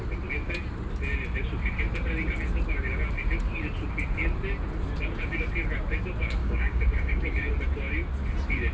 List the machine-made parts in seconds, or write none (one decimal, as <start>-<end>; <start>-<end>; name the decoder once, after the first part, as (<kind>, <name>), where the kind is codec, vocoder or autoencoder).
6.4-7.5 (codec, DAC)